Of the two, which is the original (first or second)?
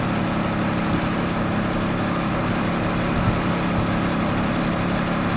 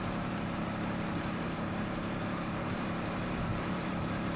first